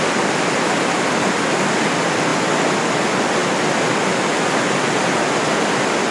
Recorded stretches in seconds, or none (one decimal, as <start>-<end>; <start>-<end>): 0.0-2.3; 2.9-6.1